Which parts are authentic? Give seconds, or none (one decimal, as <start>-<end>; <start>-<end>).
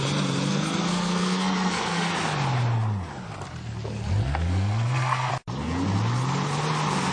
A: 0.0-0.5; 2.1-4.2; 5.3-7.1